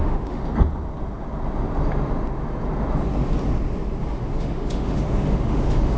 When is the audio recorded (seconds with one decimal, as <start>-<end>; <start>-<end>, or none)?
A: 0.4-4.0